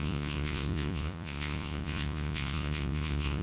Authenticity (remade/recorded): remade